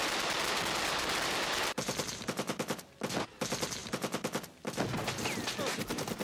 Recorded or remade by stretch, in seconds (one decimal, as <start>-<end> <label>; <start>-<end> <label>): 0.0-6.2 recorded